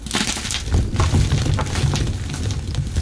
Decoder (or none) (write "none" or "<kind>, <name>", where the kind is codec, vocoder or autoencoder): none